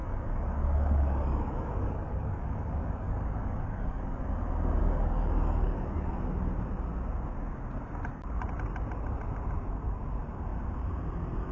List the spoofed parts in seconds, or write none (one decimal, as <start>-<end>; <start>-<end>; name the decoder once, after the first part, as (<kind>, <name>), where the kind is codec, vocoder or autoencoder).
0.0-4.2 (codec, DAC); 4.8-6.2

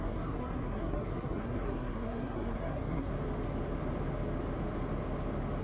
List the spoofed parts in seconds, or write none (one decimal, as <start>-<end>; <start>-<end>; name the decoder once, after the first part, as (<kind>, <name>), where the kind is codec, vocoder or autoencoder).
0.0-3.1 (codec, SNAC)